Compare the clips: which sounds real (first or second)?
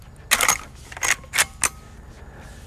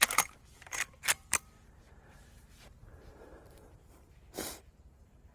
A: first